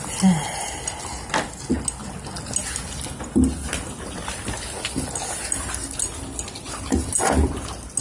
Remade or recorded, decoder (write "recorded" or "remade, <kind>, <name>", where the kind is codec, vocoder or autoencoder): recorded